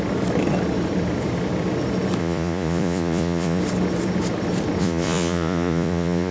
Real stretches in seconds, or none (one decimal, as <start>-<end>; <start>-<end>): 0.0-2.2; 3.6-4.8